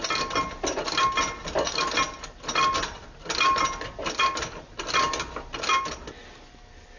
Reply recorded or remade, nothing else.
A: recorded